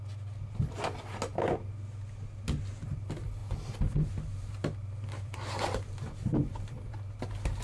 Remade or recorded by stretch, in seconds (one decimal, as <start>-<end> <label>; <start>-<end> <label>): 0.0-3.4 recorded; 3.4-7.6 remade